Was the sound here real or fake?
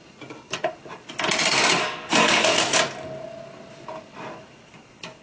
real